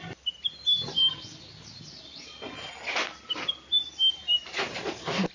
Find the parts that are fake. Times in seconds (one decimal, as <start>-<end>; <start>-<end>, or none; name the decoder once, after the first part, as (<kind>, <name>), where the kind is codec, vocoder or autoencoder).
0.0-1.0 (vocoder, BigVGAN v2); 4.2-5.3

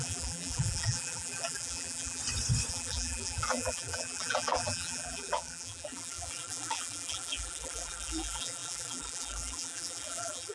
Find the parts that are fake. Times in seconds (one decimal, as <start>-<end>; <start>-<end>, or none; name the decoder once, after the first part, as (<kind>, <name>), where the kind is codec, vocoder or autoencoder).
0.0-2.2 (vocoder, BigVGAN v2); 2.7-10.5

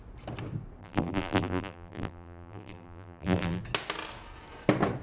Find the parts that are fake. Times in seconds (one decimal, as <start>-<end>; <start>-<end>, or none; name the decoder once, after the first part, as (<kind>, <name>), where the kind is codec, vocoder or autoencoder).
0.8-3.6 (vocoder, BigVGAN v2)

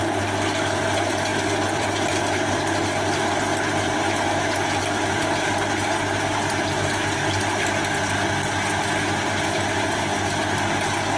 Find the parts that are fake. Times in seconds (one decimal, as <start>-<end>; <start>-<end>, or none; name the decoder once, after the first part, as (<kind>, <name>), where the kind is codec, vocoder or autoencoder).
1.3-2.6 (vocoder, BigVGAN v2)

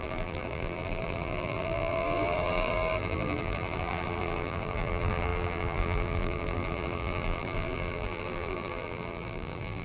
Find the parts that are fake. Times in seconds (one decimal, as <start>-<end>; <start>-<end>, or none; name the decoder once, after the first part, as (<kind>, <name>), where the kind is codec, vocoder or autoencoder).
0.0-9.8 (vocoder, BigVGAN v2)

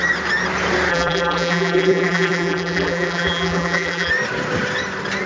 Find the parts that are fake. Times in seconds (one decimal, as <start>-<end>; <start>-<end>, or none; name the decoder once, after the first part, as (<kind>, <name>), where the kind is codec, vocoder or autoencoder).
0.9-4.1 (vocoder, BigVGAN v2)